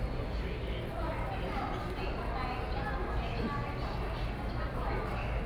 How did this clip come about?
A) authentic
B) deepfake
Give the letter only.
A